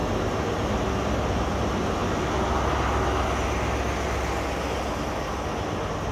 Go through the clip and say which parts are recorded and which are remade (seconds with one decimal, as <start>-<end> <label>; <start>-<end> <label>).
0.0-6.1 recorded